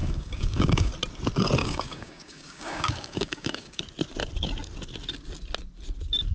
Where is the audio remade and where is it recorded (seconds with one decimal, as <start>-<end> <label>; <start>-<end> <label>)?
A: 0.0-0.9 remade; 0.9-1.6 recorded; 1.6-3.8 remade; 3.8-6.3 recorded